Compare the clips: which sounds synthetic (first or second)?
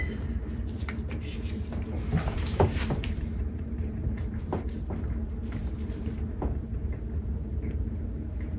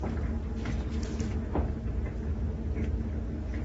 first